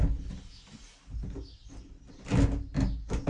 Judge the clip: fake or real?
real